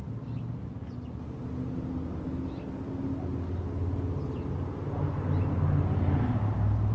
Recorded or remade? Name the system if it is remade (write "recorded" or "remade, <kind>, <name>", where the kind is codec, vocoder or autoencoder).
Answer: recorded